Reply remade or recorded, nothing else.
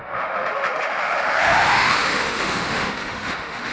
remade